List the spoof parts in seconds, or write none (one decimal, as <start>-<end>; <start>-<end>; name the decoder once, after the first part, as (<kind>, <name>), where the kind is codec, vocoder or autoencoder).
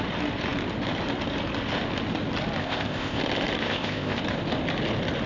2.6-3.2 (codec, ZipCodec); 3.6-4.2